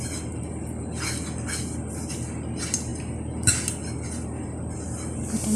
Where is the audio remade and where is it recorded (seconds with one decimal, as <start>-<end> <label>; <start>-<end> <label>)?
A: 0.0-5.6 recorded